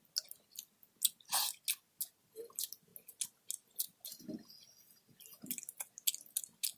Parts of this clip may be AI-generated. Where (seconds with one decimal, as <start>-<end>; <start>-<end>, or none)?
none